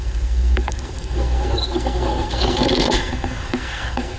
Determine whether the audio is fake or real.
fake